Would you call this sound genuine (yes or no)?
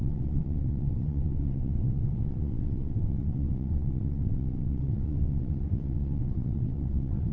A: no